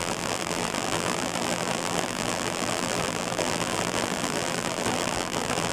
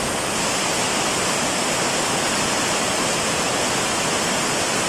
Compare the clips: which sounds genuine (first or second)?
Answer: second